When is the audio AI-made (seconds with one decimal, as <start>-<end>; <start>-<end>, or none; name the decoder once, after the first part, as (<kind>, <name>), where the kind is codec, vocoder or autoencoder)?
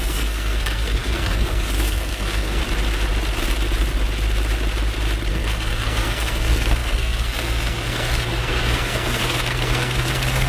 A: 0.0-2.6 (codec, SNAC); 5.3-10.5